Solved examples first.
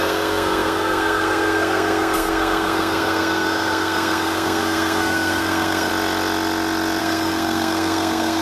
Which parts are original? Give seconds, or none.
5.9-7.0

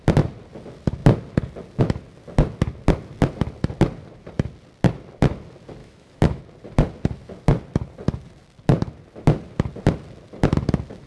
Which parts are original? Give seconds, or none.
0.0-5.8; 6.4-11.1

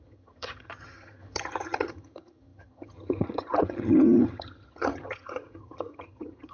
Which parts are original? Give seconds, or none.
none